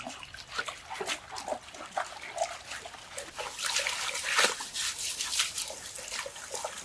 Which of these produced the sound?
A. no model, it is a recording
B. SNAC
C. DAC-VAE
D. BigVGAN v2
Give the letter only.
A